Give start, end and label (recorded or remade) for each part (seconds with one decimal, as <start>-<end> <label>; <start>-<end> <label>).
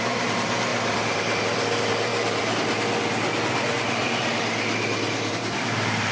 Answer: 0.0-2.1 remade; 2.1-5.3 recorded; 5.3-6.1 remade